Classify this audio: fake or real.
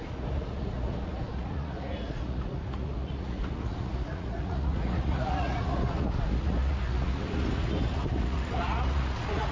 fake